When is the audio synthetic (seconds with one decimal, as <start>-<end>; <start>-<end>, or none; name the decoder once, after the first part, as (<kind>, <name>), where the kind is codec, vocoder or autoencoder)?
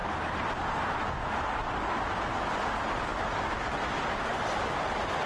none